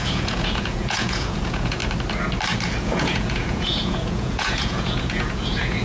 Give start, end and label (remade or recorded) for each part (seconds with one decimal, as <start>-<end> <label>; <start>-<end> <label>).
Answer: 0.0-1.8 remade; 1.8-2.8 recorded; 2.8-5.8 remade